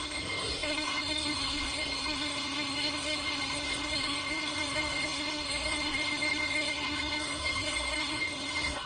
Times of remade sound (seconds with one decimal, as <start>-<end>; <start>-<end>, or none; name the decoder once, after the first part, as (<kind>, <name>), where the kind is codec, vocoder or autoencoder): 0.0-8.9 (codec, SNAC)